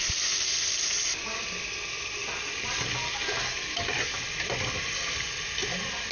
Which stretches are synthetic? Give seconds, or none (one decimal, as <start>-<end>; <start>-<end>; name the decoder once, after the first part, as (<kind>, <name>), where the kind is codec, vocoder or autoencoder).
none